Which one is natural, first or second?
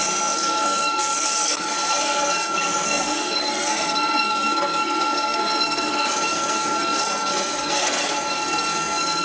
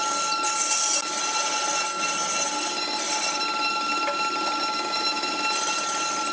second